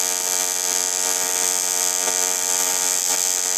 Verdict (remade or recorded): recorded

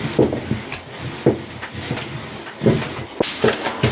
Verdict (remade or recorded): recorded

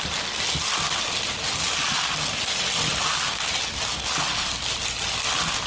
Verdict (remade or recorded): recorded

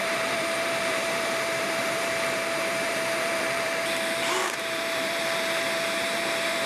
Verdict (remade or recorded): remade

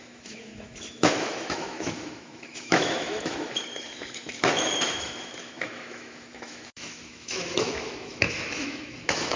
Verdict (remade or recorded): remade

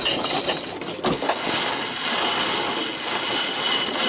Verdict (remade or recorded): recorded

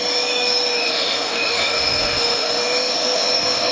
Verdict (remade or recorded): remade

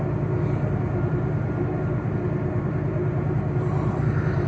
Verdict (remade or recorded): remade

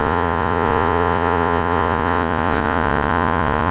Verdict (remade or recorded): remade